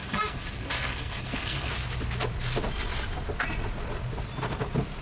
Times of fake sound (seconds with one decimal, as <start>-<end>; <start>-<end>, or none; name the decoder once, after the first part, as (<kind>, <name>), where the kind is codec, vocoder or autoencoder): 0.0-1.7 (codec, SNAC)